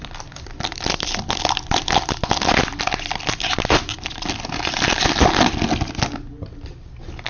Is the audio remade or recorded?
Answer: recorded